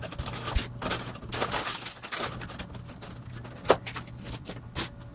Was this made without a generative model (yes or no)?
yes